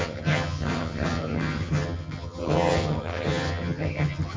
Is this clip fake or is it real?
fake